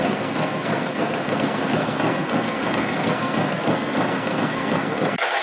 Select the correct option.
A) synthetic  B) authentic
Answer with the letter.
A